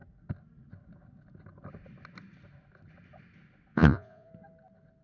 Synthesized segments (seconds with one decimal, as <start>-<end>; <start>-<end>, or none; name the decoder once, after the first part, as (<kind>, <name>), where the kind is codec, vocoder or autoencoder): 3.7-4.3 (vocoder, Vocos)